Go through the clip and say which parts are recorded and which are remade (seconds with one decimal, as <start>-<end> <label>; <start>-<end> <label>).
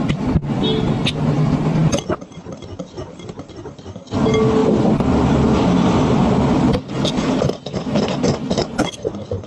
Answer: 0.0-9.5 recorded